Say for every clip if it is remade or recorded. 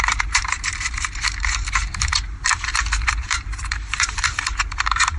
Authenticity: remade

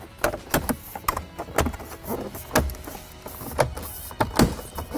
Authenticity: recorded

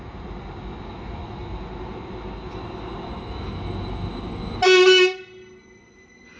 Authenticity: recorded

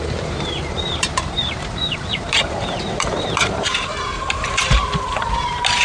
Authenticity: remade